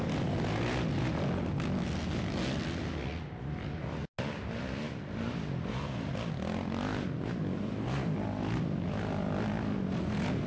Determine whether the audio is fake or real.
real